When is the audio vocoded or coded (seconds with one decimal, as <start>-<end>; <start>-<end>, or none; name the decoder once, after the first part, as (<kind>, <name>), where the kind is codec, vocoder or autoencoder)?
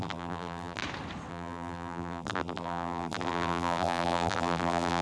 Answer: 0.0-0.8 (vocoder, BigVGAN v2); 1.3-5.0